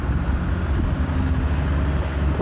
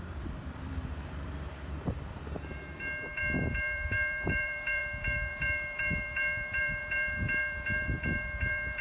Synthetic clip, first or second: second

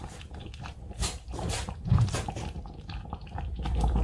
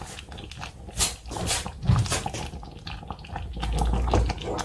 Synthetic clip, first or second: first